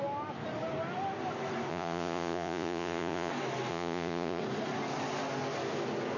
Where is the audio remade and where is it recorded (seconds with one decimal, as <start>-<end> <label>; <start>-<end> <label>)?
0.0-1.7 recorded; 1.7-3.3 remade; 3.3-3.7 recorded; 3.7-4.4 remade; 4.4-6.2 recorded